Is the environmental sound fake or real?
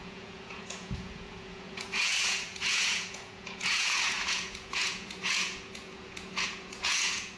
fake